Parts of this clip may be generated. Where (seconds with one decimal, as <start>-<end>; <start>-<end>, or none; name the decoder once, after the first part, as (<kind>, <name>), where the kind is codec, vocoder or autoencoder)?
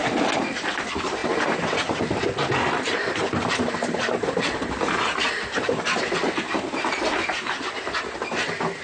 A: 0.0-8.8 (vocoder, BigVGAN v2)